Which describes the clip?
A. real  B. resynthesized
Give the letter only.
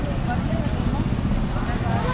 A